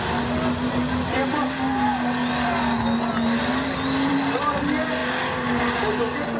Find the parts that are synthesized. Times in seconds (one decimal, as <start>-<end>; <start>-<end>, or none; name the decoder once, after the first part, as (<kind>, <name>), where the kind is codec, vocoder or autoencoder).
none